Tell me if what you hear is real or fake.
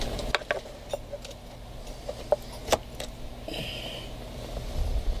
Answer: real